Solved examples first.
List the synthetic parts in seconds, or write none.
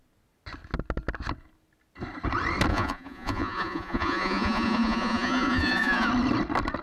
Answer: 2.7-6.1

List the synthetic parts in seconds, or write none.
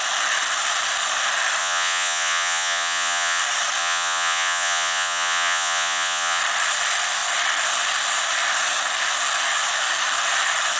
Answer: 1.6-3.4; 3.8-6.4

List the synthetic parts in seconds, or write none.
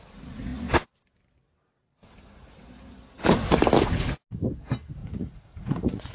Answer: 5.0-6.1